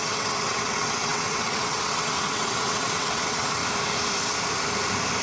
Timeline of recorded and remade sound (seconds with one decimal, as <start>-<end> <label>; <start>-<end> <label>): 0.0-3.6 remade; 3.6-5.2 recorded